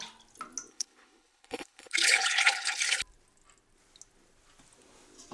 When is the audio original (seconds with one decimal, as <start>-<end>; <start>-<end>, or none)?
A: 0.0-0.7; 3.0-5.3